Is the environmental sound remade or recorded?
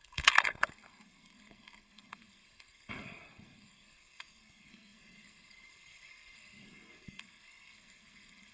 remade